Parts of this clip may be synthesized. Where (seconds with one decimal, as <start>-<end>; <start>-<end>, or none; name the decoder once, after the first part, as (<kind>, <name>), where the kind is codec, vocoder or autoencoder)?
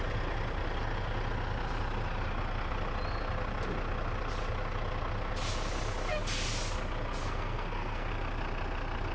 7.2-8.1 (codec, SNAC)